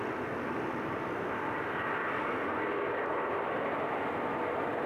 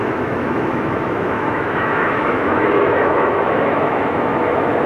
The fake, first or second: second